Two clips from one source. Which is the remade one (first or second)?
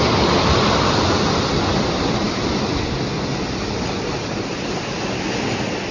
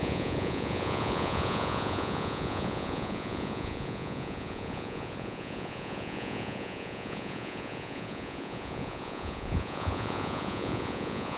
second